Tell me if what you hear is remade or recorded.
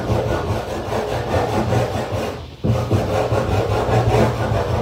recorded